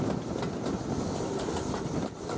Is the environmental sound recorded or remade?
recorded